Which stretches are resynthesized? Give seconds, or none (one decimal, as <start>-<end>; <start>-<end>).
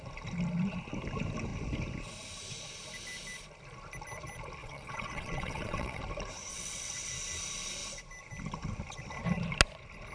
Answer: 4.6-6.0; 6.5-7.1